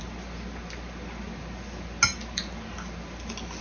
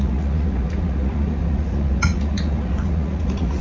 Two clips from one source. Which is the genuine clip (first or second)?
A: first